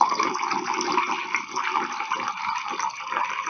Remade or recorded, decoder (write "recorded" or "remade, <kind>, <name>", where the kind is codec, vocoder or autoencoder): recorded